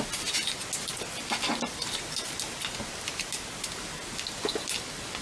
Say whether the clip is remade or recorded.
recorded